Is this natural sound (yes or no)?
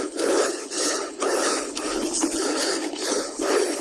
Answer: no